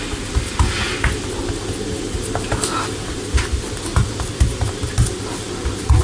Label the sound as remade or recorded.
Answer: recorded